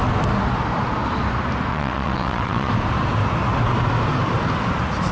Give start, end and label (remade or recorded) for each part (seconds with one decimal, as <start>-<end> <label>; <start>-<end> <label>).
0.0-1.7 recorded; 1.7-2.7 remade; 2.7-5.1 recorded